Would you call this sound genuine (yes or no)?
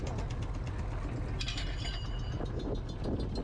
yes